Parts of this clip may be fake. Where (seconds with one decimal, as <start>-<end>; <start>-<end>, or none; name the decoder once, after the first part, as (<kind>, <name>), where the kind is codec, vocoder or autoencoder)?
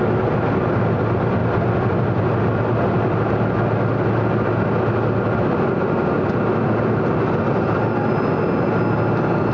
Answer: none